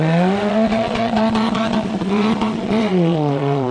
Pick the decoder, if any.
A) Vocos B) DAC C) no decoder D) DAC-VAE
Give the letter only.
A